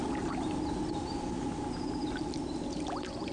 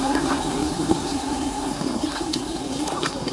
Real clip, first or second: first